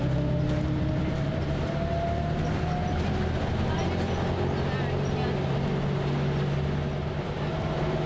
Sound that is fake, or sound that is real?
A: real